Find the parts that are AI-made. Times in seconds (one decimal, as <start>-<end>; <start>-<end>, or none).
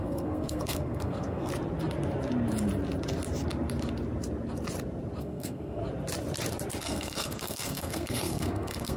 0.0-1.5; 5.2-5.8; 6.8-9.0